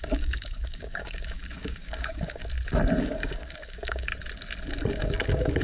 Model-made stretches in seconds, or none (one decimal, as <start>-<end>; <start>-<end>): 0.0-2.4; 3.0-4.1; 4.9-5.6